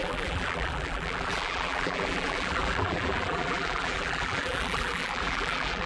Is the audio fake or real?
fake